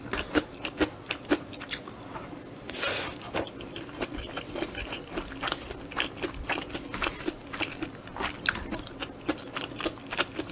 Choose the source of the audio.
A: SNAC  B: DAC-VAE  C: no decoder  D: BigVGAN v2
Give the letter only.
C